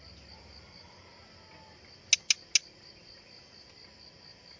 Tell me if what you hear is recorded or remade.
recorded